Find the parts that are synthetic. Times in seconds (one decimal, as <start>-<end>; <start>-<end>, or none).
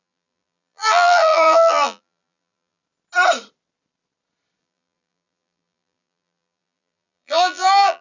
0.0-2.8; 4.6-8.0